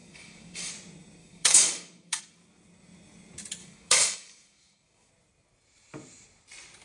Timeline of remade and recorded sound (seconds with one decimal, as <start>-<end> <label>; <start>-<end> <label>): 0.0-0.7 remade; 0.7-1.2 recorded; 1.2-2.2 remade; 2.2-3.6 recorded; 3.6-5.1 remade; 5.1-6.8 recorded